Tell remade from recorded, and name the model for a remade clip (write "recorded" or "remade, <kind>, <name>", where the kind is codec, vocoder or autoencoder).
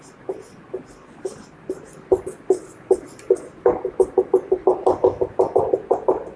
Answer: recorded